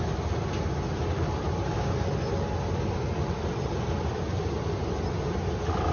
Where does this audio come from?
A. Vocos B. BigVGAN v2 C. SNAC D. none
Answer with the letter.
D